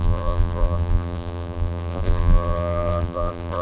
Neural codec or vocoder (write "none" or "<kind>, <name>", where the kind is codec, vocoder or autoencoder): vocoder, BigVGAN v2